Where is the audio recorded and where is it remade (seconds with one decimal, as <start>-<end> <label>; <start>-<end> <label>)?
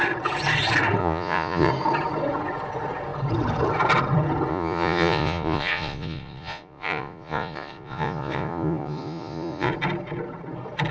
0.0-1.0 recorded; 1.0-1.7 remade; 1.7-4.5 recorded; 4.5-9.7 remade; 9.7-10.9 recorded